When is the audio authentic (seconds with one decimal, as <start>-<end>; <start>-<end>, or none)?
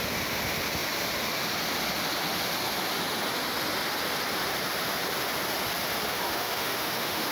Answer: 0.0-6.1